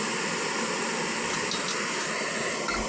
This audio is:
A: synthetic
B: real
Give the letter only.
B